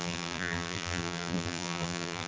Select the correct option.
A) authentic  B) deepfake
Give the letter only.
B